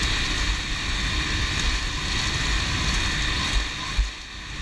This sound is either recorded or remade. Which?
recorded